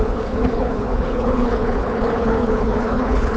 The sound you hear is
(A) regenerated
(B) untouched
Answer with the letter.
A